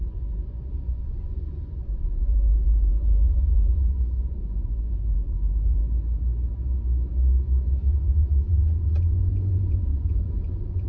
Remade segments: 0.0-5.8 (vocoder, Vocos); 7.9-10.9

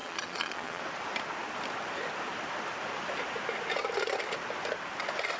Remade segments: 0.0-0.8 (vocoder, Vocos)

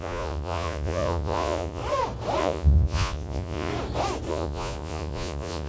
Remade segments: 0.0-1.8 (vocoder, Vocos); 2.4-3.7; 4.3-5.7

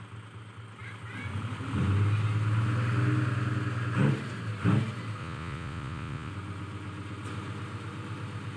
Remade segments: 5.2-6.3 (vocoder, Vocos)